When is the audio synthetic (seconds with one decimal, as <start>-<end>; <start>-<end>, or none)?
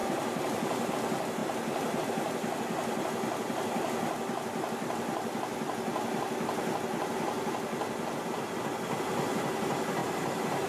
0.0-0.9; 10.0-10.7